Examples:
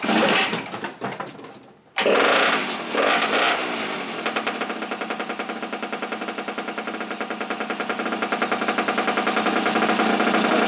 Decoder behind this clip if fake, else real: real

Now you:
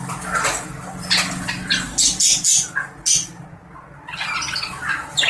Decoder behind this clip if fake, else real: real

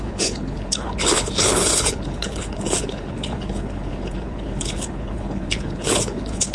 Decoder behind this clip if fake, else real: fake, codec, HILCodec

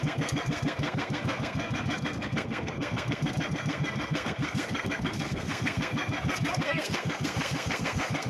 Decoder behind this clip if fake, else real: fake, codec, SNAC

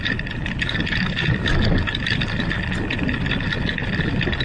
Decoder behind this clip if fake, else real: real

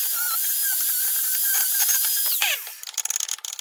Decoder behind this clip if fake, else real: real